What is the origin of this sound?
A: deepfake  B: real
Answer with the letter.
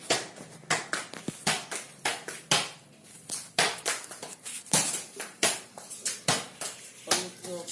B